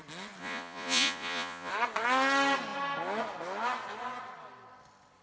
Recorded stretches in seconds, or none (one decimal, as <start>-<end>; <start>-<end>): 0.0-0.4; 1.7-5.2